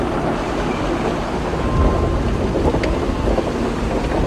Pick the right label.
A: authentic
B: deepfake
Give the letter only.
A